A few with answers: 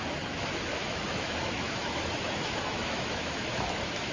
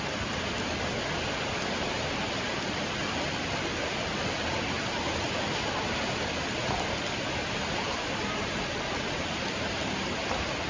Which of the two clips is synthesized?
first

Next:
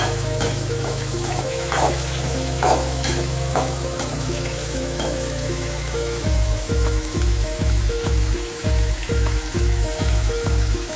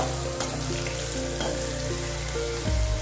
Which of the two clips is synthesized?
first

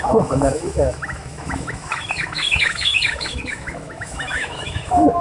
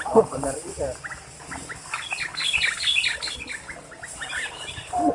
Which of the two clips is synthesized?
first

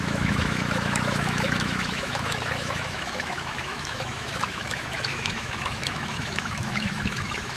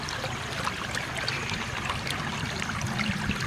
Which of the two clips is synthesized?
first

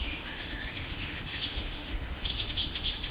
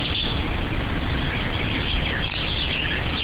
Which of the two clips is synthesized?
first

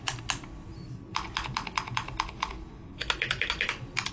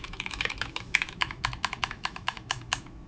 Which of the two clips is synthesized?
second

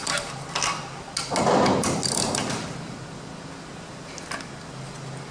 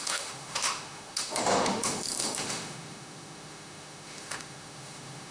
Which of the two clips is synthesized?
second